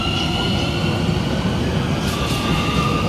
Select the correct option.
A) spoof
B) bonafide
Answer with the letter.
B